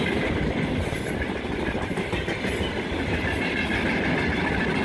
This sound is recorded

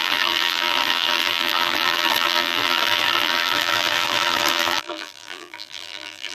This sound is remade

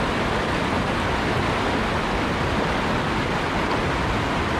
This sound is recorded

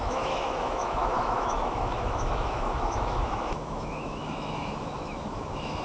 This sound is remade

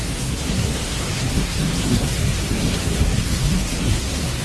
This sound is remade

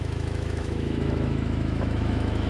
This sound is remade